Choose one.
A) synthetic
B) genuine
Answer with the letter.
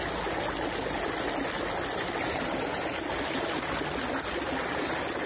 B